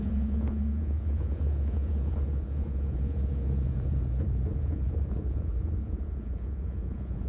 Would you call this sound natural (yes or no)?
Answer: no